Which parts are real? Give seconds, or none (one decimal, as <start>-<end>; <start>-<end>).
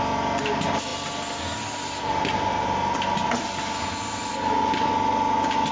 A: 0.0-5.7